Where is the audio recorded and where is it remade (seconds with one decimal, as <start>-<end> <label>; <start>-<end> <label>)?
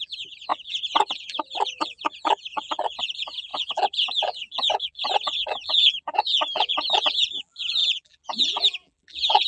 0.0-9.5 remade